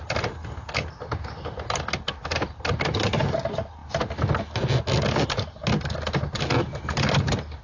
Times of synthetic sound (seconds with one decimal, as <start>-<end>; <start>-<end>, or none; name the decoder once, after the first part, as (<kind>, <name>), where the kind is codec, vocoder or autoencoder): none